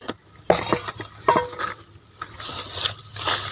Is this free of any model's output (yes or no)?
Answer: yes